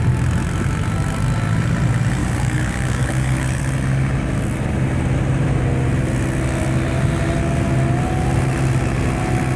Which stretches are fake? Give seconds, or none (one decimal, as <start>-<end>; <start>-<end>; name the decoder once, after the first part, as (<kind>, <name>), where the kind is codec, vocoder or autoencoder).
2.2-3.6 (codec, DAC)